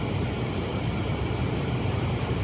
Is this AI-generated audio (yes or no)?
yes